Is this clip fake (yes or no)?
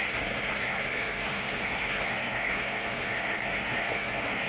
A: yes